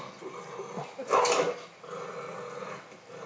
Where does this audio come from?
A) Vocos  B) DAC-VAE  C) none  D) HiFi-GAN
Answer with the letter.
C